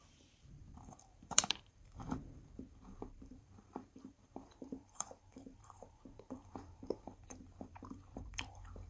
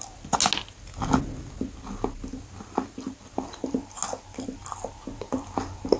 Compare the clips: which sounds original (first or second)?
second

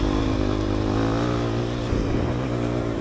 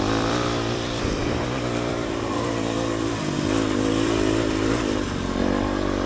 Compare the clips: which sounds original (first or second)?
first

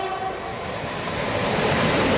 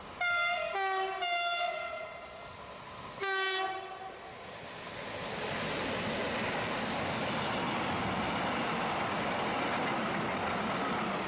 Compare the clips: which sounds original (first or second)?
second